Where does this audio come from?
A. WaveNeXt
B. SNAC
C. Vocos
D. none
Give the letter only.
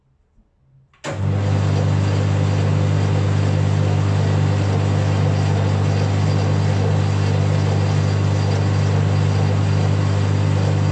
D